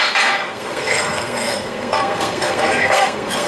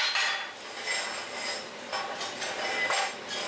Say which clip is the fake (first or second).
first